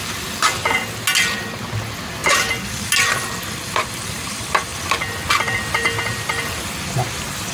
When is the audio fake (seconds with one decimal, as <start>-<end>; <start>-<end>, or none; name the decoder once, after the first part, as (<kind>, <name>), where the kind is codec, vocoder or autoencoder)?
none